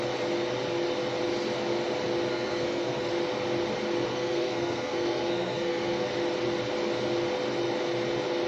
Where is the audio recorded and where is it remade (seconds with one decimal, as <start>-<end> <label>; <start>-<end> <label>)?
0.0-2.3 recorded; 2.3-3.1 remade; 3.1-4.1 recorded; 4.1-6.1 remade; 6.1-8.5 recorded